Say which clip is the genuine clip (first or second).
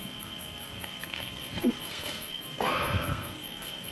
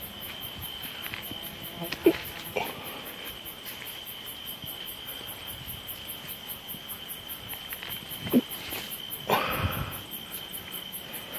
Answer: second